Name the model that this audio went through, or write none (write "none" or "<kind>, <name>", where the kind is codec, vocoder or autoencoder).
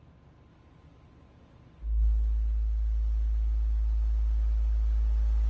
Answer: none